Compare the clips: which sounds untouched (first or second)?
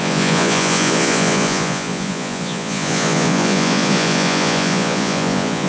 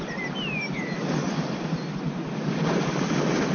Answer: second